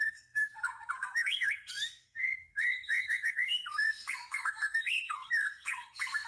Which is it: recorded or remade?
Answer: remade